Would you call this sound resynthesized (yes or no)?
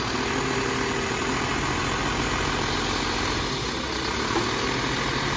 no